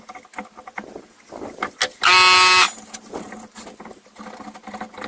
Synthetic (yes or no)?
no